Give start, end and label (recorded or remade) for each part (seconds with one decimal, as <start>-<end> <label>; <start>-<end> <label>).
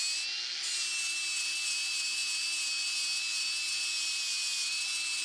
0.0-5.2 recorded